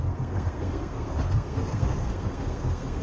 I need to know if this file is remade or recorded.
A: remade